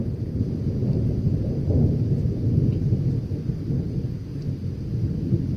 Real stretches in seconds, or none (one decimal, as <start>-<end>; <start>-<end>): 2.3-5.6

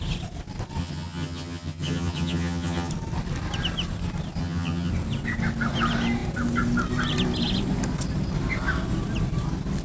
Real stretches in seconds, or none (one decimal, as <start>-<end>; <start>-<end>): 0.0-0.8; 2.9-4.4; 4.9-9.8